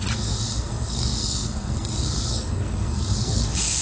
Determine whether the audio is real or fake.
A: fake